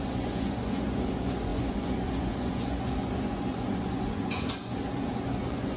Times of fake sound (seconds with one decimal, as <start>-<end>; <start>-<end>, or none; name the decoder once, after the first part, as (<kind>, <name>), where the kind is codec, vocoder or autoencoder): 0.0-5.8 (vocoder, Vocos)